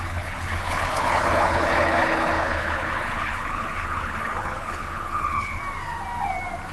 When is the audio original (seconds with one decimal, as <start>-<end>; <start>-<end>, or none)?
5.6-6.7